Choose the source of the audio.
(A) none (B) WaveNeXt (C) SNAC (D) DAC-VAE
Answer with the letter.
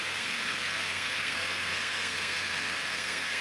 C